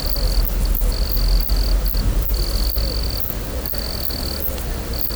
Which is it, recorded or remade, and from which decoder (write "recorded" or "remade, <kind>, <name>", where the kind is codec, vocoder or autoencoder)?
recorded